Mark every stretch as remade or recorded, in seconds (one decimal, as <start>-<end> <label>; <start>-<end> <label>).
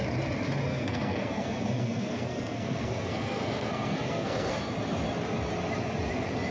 0.0-0.7 recorded; 0.7-4.6 remade; 4.6-6.5 recorded